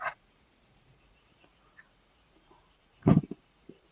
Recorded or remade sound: remade